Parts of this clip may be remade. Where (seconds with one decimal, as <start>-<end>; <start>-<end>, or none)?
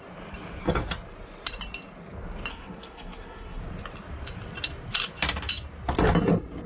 2.5-3.6